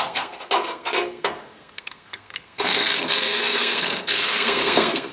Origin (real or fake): fake